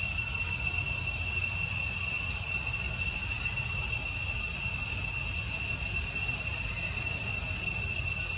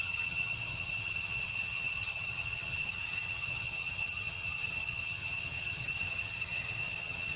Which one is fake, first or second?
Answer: second